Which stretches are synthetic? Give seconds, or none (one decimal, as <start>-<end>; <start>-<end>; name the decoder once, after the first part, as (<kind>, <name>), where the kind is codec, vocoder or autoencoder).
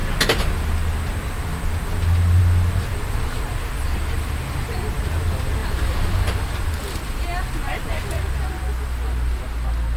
none